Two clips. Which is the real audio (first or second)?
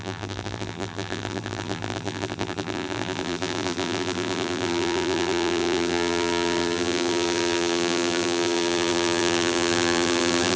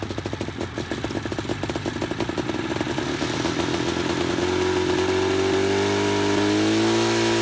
second